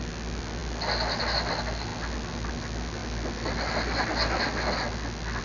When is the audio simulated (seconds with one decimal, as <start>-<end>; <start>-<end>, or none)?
none